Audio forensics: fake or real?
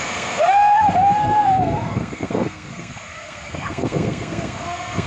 fake